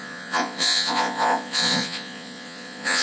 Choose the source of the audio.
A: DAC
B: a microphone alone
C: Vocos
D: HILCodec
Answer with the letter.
C